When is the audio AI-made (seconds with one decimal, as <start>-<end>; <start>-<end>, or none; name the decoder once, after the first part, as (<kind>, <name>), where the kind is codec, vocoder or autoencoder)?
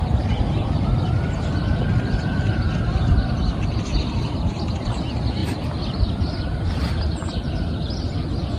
none